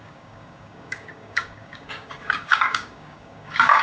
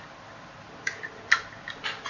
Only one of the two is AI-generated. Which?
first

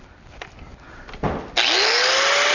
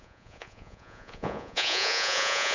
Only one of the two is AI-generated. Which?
second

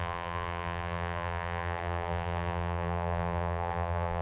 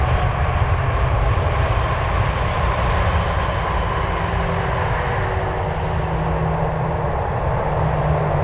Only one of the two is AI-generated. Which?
first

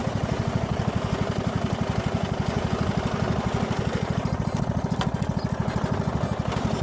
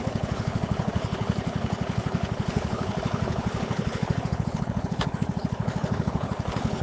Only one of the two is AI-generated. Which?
second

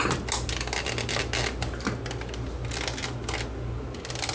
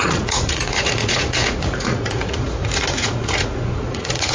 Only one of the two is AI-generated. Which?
second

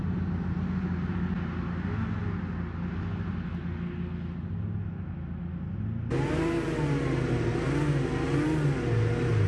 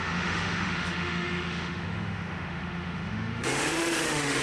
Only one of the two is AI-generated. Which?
second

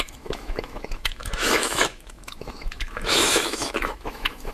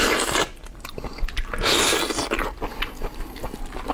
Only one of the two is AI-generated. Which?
first